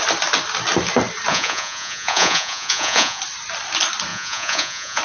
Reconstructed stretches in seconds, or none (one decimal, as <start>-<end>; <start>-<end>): 1.3-3.2; 4.1-5.0